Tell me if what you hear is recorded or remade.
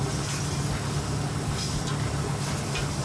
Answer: recorded